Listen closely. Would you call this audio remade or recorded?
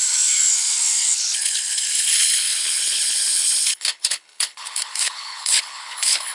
remade